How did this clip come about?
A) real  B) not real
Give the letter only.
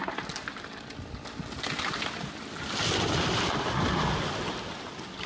A